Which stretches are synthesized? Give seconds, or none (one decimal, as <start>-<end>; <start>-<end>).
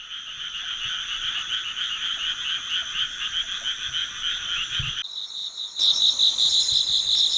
none